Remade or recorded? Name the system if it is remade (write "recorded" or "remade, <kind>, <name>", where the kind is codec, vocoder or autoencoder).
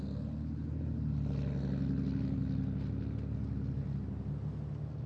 recorded